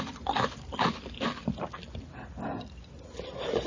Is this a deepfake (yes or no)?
no